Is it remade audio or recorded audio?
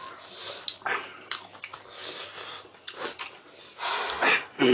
recorded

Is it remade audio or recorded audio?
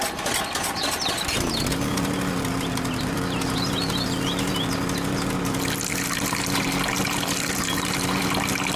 recorded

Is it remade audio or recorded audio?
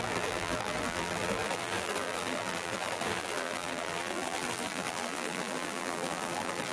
remade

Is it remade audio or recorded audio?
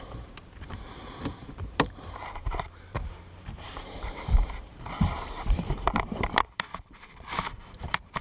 remade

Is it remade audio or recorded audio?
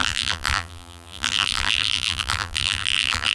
remade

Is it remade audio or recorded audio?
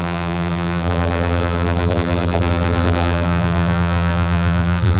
remade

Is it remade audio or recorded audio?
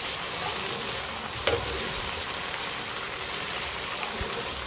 recorded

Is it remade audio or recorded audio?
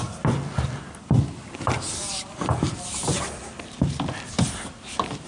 recorded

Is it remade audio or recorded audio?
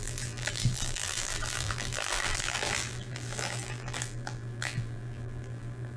remade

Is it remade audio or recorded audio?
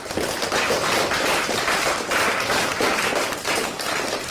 remade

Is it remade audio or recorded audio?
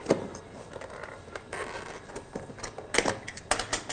recorded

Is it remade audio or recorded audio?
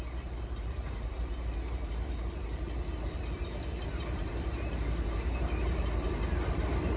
remade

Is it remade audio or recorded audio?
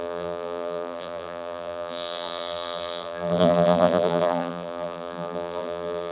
remade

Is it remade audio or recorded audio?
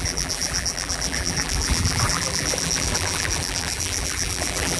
remade